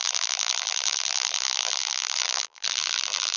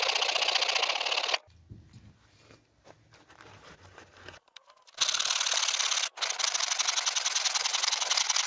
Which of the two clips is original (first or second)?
second